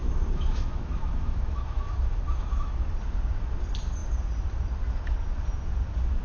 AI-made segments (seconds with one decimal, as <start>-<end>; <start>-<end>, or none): 0.0-2.9